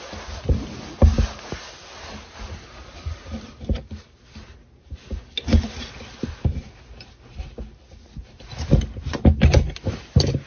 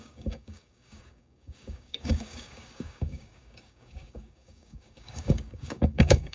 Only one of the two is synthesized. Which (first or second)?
second